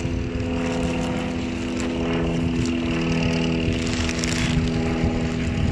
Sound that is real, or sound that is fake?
real